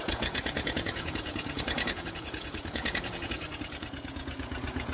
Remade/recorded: remade